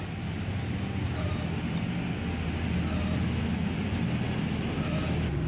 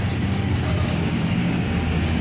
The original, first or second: first